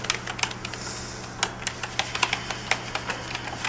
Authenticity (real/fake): real